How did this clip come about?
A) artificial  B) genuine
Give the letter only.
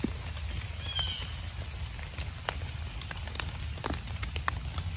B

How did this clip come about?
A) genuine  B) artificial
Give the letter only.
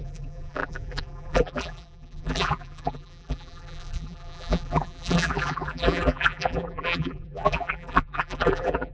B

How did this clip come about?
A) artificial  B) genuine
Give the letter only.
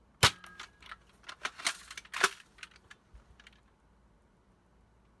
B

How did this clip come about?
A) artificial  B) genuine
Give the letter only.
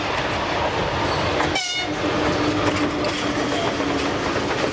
B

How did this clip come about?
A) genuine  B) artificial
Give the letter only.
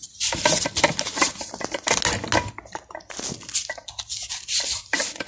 A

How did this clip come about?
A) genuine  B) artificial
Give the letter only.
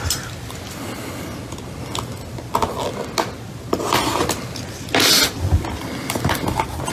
A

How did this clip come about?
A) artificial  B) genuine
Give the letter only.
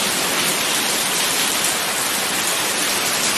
B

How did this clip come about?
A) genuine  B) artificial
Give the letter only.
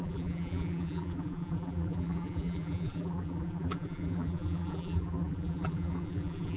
B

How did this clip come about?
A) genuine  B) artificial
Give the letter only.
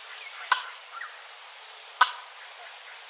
B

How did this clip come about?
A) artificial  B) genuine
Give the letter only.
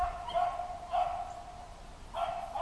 B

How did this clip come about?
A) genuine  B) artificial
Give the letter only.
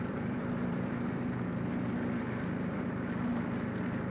B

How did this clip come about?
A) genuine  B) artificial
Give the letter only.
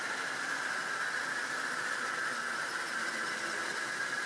B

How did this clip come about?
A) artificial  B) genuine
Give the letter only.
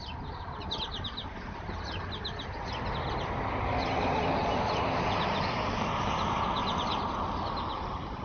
B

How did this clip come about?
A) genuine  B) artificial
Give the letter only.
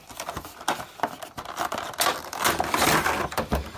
A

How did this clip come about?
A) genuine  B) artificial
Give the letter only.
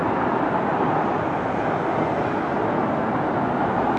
A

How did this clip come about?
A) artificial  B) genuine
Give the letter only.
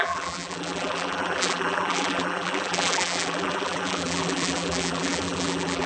A